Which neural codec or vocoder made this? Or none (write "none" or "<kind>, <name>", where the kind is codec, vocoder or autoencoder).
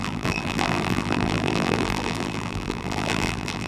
vocoder, BigVGAN v2